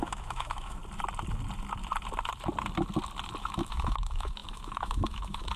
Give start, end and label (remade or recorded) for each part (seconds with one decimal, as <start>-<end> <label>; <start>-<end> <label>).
0.0-0.8 remade; 0.8-3.4 recorded; 3.4-5.6 remade